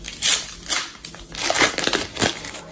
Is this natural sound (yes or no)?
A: yes